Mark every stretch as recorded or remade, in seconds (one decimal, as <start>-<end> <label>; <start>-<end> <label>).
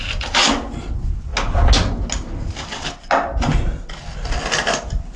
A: 0.0-5.2 recorded